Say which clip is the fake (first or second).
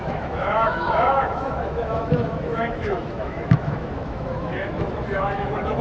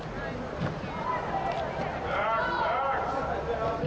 first